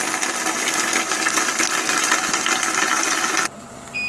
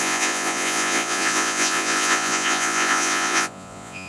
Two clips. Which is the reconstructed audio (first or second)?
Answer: second